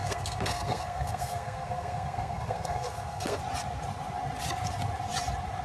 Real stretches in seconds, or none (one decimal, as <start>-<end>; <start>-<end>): 3.4-5.6